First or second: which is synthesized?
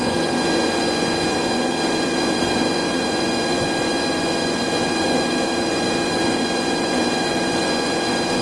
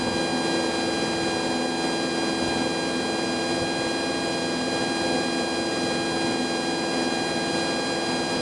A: first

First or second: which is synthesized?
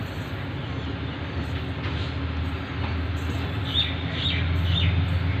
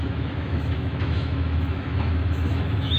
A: second